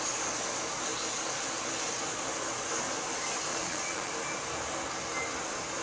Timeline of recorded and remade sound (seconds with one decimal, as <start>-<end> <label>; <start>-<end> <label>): 0.0-3.5 recorded; 3.5-4.1 remade; 4.1-5.8 recorded